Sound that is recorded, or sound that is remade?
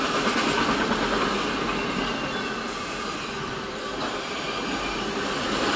recorded